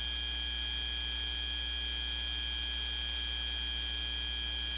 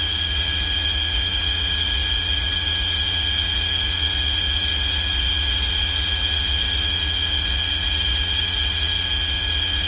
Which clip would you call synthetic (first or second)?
second